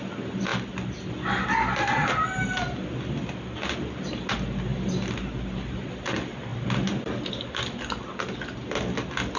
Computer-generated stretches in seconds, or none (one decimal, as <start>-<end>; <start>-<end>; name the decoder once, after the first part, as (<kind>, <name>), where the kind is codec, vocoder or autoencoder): 0.5-1.1 (vocoder, BigVGAN v2); 4.7-5.9